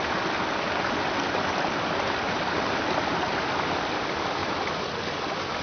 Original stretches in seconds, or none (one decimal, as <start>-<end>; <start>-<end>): 0.0-5.6

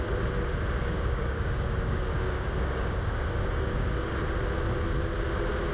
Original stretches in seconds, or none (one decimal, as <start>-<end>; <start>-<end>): 0.0-0.8; 4.2-5.7

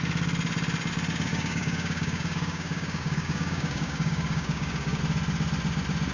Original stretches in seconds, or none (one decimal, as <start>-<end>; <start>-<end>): 0.0-1.3; 5.0-6.1